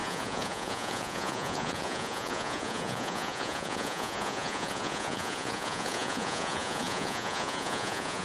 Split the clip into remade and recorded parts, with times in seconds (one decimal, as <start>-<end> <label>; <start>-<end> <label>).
0.0-8.2 remade